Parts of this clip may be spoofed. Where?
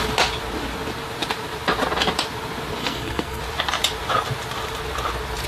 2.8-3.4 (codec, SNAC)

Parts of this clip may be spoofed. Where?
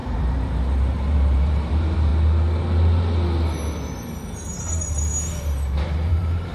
0.0-2.1 (vocoder, BigVGAN v2); 4.6-5.1; 6.1-6.5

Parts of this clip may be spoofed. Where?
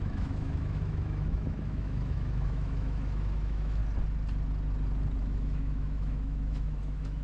0.0-3.8 (autoencoder, DAC-VAE); 5.2-7.2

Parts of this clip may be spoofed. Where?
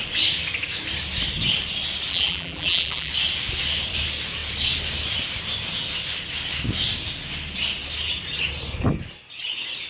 2.1-3.1 (vocoder, BigVGAN v2)